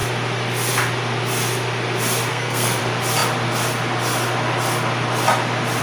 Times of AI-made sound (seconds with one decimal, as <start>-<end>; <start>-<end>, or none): 2.3-2.8